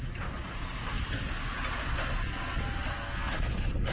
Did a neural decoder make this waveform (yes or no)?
no